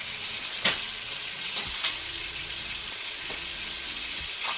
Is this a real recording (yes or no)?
no